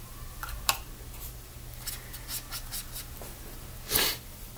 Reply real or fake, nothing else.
real